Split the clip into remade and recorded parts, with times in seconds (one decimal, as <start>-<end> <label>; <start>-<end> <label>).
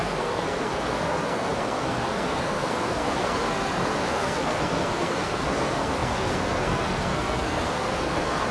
0.0-8.5 remade